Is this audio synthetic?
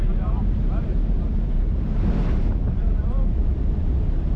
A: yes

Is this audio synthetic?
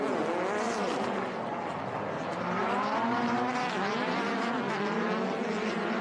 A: no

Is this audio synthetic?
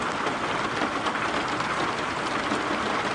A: no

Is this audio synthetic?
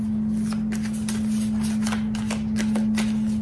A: no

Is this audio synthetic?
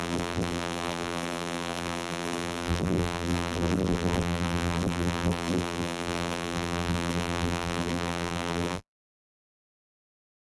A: yes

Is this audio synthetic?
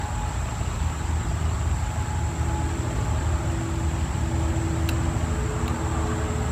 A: no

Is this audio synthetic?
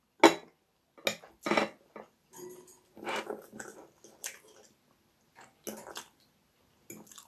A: no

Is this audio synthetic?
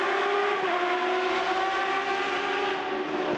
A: no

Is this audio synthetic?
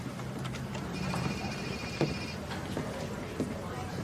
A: yes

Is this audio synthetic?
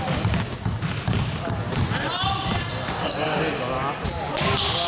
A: no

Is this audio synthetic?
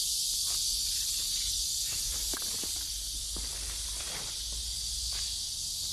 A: no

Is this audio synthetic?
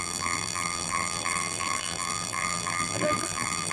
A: yes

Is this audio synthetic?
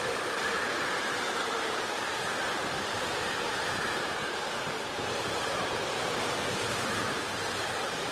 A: yes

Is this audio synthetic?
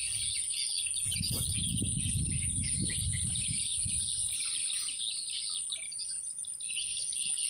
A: no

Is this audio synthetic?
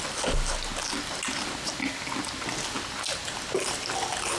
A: no